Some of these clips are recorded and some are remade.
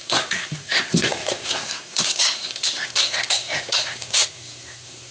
remade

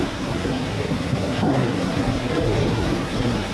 remade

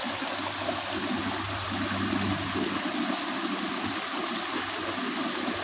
recorded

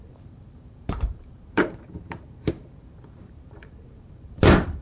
remade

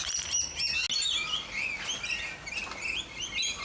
recorded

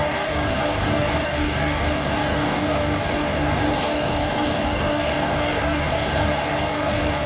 remade